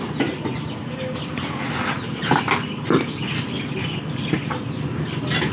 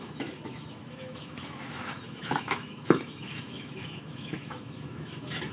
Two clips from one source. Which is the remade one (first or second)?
second